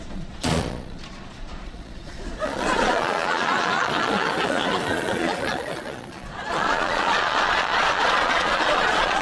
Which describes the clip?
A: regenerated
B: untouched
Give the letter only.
A